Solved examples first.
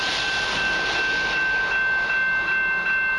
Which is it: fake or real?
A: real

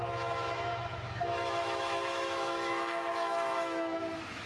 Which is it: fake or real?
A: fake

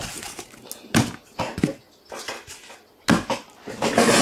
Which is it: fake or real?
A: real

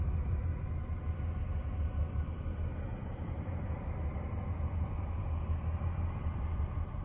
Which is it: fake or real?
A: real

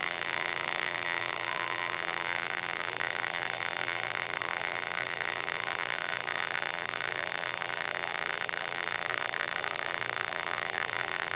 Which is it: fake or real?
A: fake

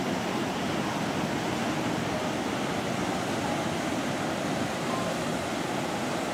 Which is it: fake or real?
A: real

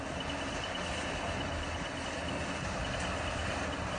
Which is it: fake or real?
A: real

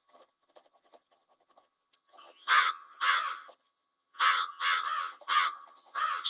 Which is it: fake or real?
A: fake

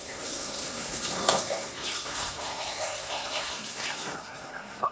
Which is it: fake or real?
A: fake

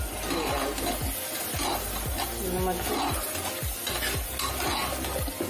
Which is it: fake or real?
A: real